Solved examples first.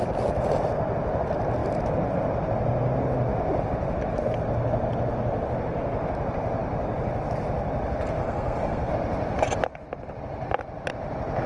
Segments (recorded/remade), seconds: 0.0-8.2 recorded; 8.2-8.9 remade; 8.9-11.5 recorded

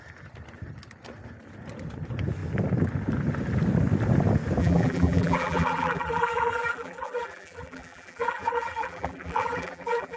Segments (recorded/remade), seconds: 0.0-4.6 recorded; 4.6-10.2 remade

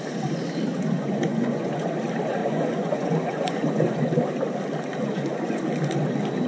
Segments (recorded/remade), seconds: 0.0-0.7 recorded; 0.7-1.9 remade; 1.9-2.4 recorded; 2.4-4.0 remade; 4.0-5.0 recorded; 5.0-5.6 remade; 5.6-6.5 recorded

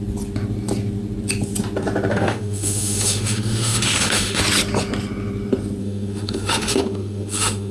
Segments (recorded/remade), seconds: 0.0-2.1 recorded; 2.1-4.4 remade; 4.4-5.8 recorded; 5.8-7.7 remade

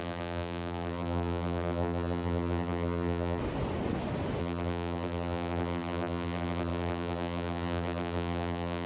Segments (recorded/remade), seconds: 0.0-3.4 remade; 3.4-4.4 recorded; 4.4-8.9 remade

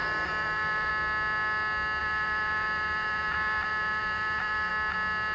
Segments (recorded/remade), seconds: 0.0-0.9 remade; 0.9-2.0 recorded; 2.0-4.7 remade; 4.7-5.3 recorded

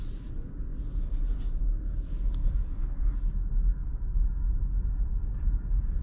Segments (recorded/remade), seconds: 0.0-2.4 recorded; 2.4-3.0 remade; 3.0-6.0 recorded